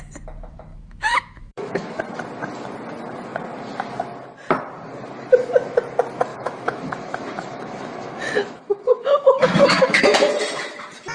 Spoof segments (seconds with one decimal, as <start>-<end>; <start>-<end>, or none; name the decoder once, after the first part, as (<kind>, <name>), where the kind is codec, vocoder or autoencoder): 0.7-2.0 (autoencoder, DAC-VAE); 6.3-10.3

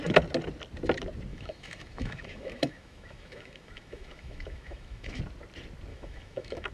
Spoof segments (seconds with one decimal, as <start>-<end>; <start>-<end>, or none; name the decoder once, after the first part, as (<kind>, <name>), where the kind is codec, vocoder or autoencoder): 1.3-5.2 (autoencoder, DAC-VAE); 5.9-6.7